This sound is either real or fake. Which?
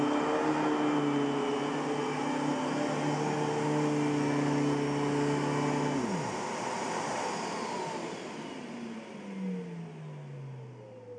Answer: real